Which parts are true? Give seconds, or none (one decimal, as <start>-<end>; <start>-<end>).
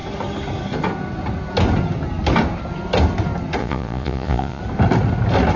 0.0-3.6; 4.6-5.6